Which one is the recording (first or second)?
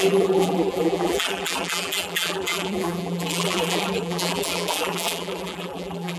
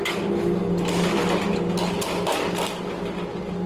second